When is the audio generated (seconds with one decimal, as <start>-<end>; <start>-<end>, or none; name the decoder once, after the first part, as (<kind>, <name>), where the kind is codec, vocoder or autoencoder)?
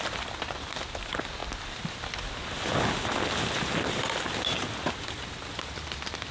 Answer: none